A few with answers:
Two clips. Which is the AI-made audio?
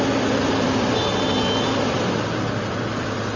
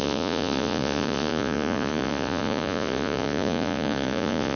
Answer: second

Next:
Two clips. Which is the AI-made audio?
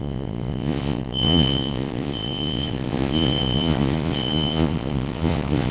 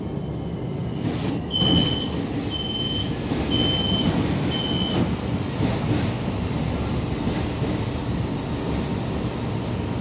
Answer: first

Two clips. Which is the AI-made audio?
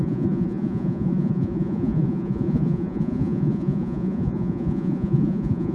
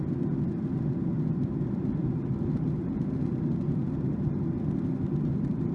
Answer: first